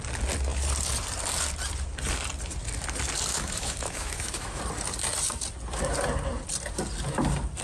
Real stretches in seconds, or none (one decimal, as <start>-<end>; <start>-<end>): 0.0-3.3; 4.6-7.6